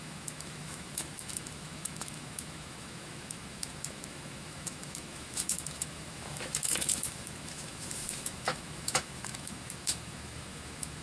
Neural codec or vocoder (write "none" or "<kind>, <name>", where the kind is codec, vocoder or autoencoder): autoencoder, DAC-VAE